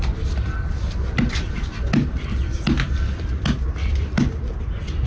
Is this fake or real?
real